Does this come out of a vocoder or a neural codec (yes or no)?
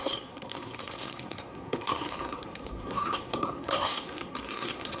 yes